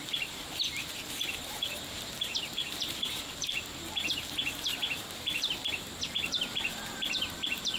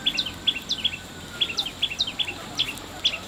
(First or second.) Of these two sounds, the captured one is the second